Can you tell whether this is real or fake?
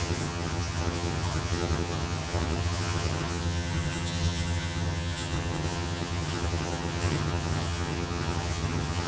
fake